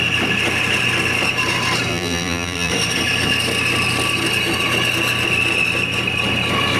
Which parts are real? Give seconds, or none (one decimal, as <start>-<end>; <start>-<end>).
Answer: 0.0-1.9; 2.7-6.8